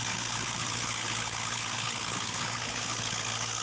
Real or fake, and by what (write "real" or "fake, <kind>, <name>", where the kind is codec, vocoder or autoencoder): fake, codec, HILCodec